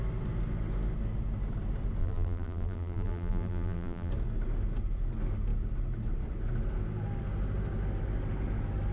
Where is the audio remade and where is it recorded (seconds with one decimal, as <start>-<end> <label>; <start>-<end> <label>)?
0.0-2.0 recorded; 2.0-4.1 remade; 4.1-8.9 recorded